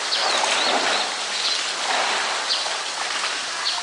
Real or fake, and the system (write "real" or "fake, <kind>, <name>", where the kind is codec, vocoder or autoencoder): real